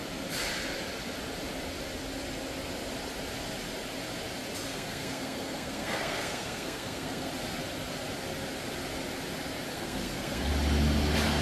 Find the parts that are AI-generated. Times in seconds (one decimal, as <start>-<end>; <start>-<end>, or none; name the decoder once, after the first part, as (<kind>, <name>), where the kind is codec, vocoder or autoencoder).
4.7-7.3 (codec, SNAC); 9.7-10.5